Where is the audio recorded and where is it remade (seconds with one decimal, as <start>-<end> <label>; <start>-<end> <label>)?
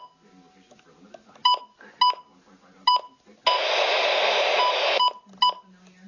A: 0.0-1.4 recorded; 1.4-2.0 remade; 2.0-6.1 recorded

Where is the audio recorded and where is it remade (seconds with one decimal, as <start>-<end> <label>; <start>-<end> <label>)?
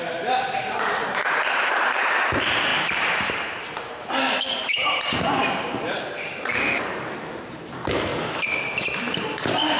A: 0.0-8.1 remade; 8.1-9.0 recorded; 9.0-9.8 remade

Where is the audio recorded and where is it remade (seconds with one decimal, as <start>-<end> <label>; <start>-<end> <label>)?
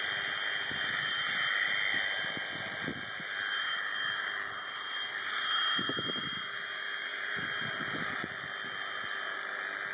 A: 0.0-2.9 recorded; 2.9-6.4 remade; 6.4-7.1 recorded; 7.1-7.6 remade; 7.6-9.9 recorded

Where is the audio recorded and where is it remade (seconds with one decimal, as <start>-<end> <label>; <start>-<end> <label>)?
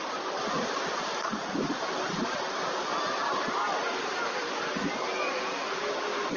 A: 0.0-6.4 recorded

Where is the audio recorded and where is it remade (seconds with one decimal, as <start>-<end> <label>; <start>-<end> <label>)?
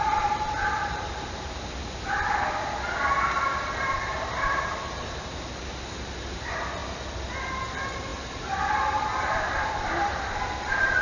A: 0.0-6.8 remade; 6.8-7.3 recorded; 7.3-11.0 remade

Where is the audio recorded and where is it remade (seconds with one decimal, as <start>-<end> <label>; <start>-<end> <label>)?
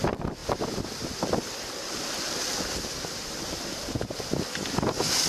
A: 0.0-0.4 recorded; 0.4-3.6 remade; 3.6-5.3 recorded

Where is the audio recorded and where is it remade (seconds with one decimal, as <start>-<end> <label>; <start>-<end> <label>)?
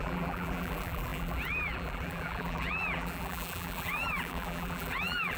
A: 0.0-5.4 remade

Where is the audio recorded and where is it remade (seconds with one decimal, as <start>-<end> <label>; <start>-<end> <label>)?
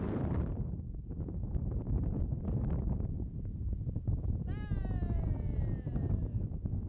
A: 0.0-0.5 recorded; 0.5-4.3 remade; 4.3-6.9 recorded